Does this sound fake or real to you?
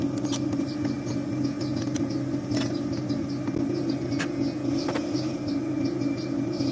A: real